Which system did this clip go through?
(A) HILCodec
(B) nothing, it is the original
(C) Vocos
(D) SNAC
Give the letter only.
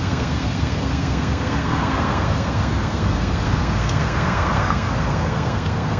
D